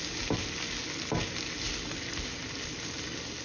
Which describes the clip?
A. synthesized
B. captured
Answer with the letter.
B